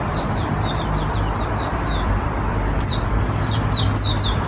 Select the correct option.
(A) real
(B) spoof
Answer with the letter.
B